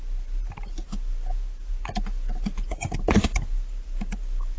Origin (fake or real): real